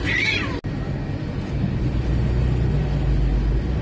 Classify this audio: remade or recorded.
recorded